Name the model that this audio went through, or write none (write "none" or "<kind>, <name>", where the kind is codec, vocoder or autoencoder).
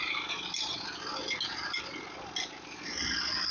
none